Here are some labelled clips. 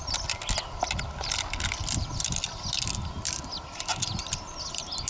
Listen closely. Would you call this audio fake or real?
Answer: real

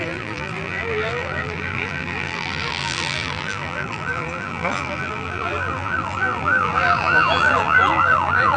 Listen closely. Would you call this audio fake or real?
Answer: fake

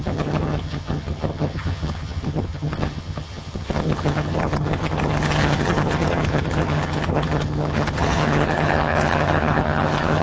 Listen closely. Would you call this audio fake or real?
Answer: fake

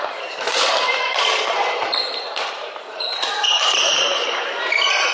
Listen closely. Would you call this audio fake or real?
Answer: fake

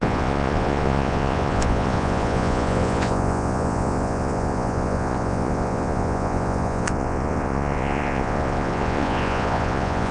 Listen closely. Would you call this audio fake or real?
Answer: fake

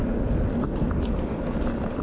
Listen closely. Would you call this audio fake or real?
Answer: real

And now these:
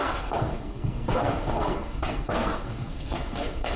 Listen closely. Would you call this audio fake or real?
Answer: fake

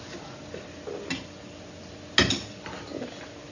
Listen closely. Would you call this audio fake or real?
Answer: real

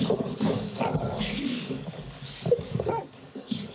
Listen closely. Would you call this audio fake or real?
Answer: fake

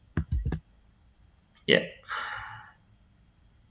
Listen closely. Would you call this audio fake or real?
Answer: real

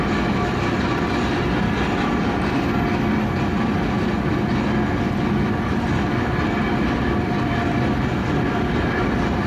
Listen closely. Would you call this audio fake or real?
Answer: real